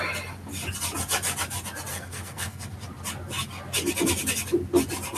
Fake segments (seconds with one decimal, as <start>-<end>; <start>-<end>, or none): 1.9-2.7